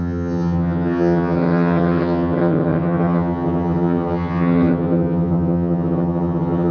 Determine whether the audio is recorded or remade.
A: remade